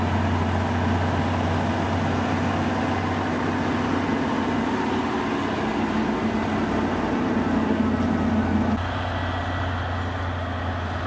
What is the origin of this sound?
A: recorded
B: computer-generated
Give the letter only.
A